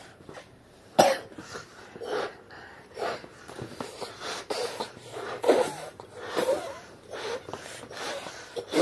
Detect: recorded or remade remade